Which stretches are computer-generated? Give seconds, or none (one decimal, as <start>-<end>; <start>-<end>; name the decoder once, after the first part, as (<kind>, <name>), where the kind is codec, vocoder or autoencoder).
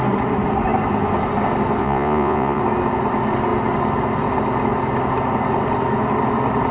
1.8-2.6 (vocoder, Vocos)